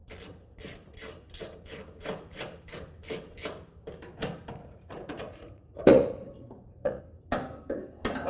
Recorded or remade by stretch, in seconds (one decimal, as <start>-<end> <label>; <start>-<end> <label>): 0.0-4.6 recorded; 4.6-7.0 remade; 7.0-8.3 recorded